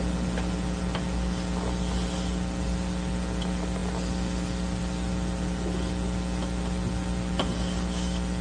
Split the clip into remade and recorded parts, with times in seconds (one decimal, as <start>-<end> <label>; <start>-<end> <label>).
0.0-8.4 recorded